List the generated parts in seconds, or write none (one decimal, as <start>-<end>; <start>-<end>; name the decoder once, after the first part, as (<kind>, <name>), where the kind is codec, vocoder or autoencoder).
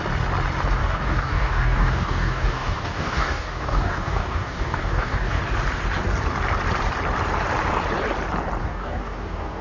0.8-5.4 (codec, DAC); 8.6-9.6